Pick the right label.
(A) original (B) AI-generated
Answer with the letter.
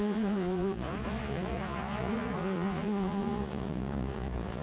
B